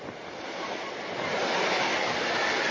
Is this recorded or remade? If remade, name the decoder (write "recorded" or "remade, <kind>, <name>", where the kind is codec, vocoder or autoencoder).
recorded